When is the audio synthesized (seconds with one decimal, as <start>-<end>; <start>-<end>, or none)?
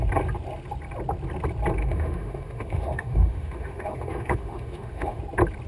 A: 1.8-5.2